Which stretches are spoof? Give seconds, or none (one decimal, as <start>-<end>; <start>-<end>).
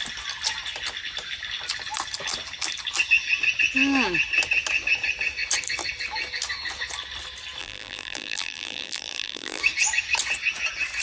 7.6-9.6